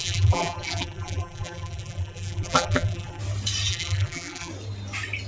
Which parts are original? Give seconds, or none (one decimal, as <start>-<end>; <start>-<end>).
3.2-3.7; 4.5-5.3